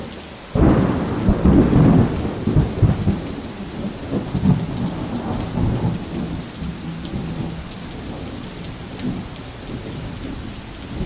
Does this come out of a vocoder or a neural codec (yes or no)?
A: no